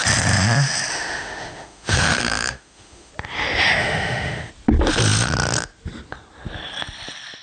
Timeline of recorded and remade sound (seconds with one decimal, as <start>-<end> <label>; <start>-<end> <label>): 0.0-0.9 recorded; 0.9-3.1 remade; 3.1-3.8 recorded; 3.8-4.5 remade; 4.5-7.4 recorded